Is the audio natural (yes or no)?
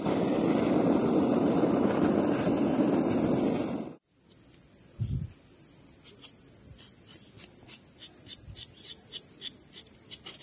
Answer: yes